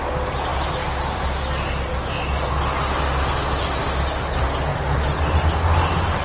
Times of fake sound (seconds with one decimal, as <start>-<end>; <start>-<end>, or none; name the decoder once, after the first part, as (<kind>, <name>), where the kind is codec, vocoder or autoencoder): 4.7-5.4 (vocoder, BigVGAN v2)